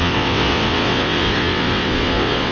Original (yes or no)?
no